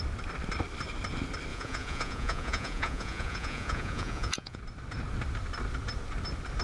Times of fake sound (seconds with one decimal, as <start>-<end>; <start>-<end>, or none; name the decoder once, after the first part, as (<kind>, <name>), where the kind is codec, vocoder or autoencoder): 1.5-4.6 (vocoder, Vocos)